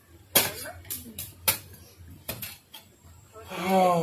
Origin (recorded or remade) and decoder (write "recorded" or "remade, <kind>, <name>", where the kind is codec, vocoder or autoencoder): recorded